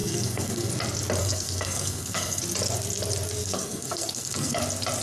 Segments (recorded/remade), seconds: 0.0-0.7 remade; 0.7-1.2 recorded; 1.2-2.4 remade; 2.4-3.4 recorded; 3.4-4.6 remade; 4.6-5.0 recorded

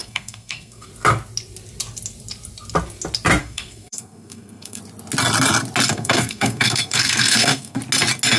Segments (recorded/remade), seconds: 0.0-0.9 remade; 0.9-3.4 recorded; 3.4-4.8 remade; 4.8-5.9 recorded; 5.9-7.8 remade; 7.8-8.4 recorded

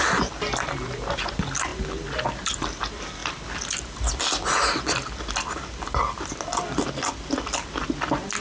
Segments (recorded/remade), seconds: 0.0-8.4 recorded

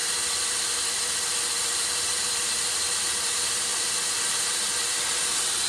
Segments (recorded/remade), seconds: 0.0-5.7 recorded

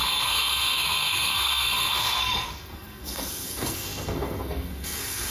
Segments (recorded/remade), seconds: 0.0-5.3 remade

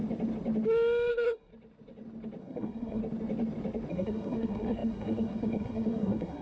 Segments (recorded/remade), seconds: 0.0-1.1 recorded; 1.1-1.5 remade; 1.5-2.4 recorded; 2.4-3.0 remade; 3.0-3.9 recorded; 3.9-6.4 remade